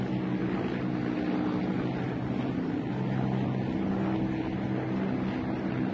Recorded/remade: recorded